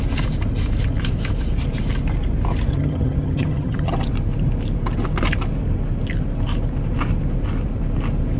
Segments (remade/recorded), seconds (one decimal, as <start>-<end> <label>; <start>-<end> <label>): 0.0-2.7 recorded; 2.7-3.9 remade; 3.9-8.4 recorded